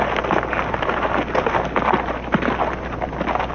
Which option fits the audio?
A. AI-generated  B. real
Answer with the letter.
B